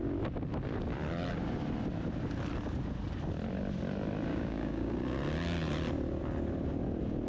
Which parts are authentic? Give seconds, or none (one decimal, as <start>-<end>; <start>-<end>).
0.0-4.3; 4.9-7.3